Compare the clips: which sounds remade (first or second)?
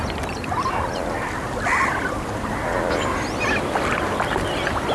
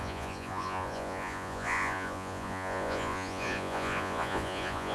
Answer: second